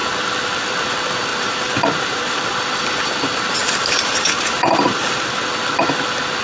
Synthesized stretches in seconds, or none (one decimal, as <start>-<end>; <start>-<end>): 1.3-2.3; 3.6-5.4